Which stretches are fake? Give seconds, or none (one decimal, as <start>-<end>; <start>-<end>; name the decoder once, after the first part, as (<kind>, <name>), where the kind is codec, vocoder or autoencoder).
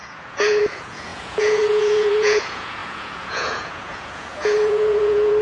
0.0-5.4 (vocoder, Vocos)